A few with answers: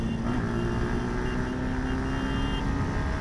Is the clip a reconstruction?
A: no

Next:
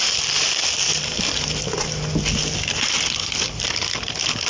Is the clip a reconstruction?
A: no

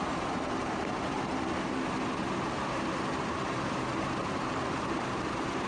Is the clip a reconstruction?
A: yes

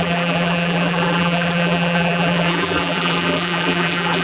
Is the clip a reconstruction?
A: yes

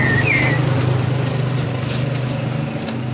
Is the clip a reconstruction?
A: no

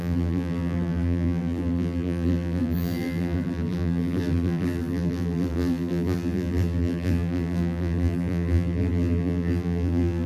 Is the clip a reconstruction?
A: yes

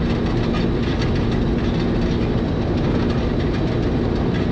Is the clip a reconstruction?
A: no